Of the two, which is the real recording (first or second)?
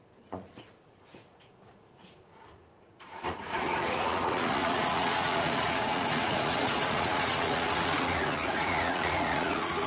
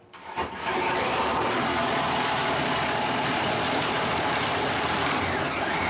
second